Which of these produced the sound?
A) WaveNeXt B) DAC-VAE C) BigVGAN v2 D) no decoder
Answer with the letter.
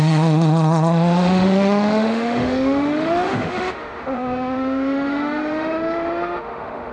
B